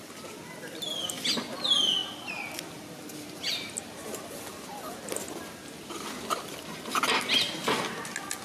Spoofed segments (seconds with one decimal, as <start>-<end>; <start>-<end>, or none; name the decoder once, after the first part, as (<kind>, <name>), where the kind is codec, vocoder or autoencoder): none